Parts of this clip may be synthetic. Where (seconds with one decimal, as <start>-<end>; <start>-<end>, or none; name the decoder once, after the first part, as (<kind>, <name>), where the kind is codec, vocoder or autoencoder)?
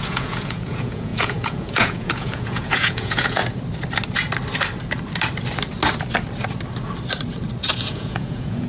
0.0-3.4 (vocoder, Vocos); 7.9-8.7